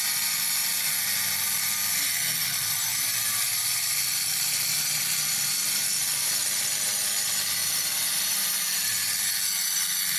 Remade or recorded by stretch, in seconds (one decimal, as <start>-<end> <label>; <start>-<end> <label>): 0.0-10.2 recorded